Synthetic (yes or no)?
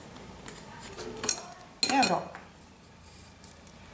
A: no